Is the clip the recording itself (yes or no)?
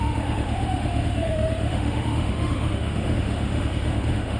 no